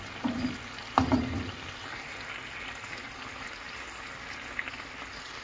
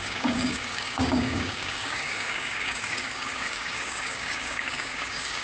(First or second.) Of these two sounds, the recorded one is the first